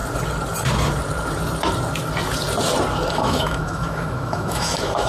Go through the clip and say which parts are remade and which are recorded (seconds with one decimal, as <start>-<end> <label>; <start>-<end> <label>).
0.0-3.1 recorded; 3.1-5.1 remade